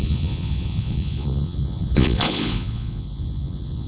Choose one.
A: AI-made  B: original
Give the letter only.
A